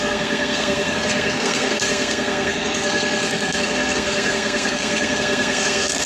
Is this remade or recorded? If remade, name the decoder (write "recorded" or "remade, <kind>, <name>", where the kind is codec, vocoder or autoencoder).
remade, codec, SNAC